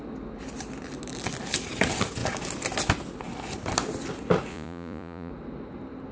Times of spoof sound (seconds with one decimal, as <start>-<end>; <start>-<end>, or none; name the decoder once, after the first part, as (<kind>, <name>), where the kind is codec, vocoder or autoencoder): 4.5-5.3 (vocoder, Vocos)